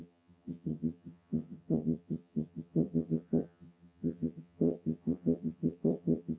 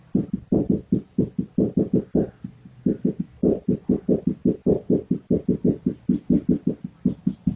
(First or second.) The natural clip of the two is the second